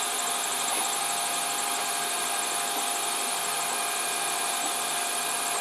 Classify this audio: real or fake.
real